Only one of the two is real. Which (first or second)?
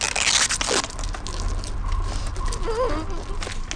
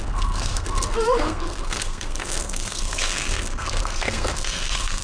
first